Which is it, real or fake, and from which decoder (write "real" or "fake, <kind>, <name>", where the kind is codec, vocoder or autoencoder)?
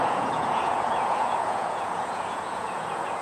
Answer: fake, vocoder, Vocos